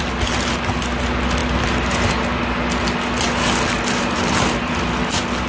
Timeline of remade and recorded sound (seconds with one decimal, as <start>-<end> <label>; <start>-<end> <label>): 0.0-5.5 recorded